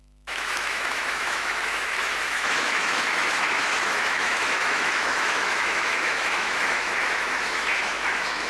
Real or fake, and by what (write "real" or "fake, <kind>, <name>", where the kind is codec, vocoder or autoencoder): fake, autoencoder, DAC-VAE